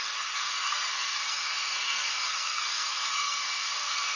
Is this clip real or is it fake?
fake